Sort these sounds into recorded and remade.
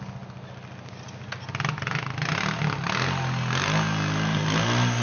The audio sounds recorded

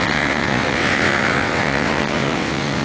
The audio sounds remade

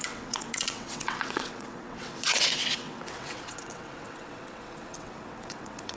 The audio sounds remade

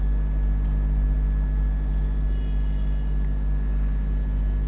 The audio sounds recorded